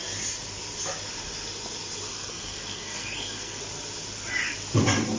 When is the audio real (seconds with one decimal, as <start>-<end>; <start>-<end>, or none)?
0.0-2.1; 3.6-5.2